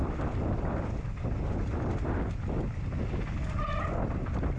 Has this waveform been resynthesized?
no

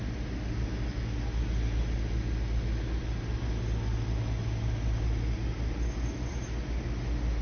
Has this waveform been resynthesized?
no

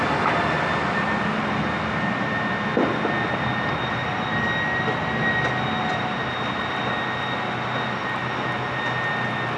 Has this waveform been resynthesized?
no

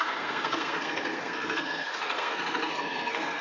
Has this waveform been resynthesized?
yes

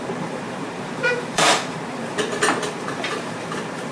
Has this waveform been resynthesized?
yes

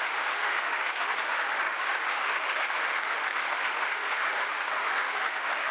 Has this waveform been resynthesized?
yes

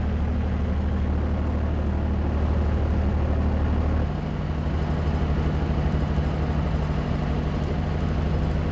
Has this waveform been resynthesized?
no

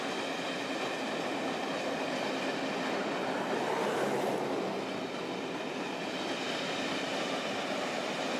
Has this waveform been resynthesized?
no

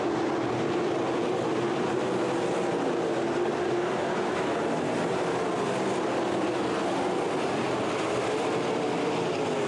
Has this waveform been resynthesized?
no